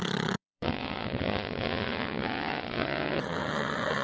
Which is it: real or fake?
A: fake